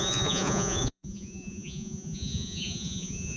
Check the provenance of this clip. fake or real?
fake